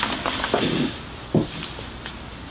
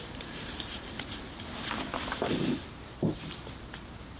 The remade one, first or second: second